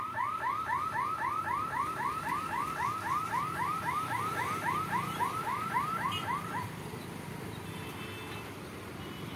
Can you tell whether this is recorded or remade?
recorded